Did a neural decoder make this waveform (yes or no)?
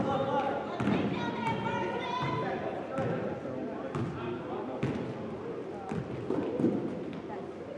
no